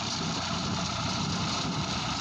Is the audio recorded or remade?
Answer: recorded